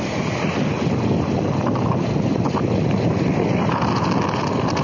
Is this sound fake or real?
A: real